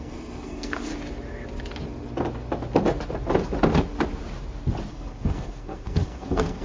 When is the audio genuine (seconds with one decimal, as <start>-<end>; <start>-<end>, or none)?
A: 0.9-4.9